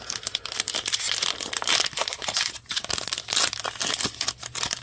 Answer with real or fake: real